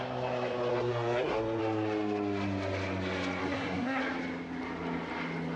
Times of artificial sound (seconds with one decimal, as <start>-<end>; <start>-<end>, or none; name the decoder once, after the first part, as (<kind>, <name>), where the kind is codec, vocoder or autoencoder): 0.7-1.6 (codec, SNAC); 3.4-4.0